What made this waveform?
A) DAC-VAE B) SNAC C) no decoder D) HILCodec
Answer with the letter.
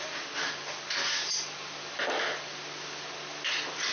C